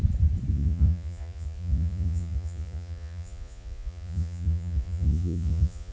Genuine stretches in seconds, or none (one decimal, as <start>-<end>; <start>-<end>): 0.0-0.5